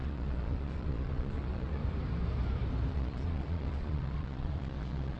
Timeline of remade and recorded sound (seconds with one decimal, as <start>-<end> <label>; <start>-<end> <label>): 0.0-1.8 remade; 1.8-2.9 recorded; 2.9-5.2 remade